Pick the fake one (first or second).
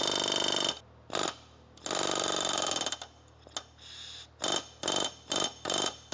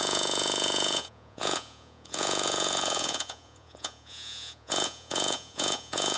second